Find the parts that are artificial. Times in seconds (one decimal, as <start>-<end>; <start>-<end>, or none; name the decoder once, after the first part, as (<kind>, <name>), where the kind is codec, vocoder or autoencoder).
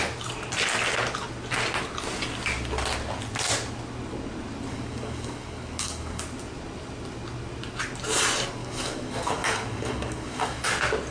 4.7-6.2 (codec, DAC); 8.6-10.7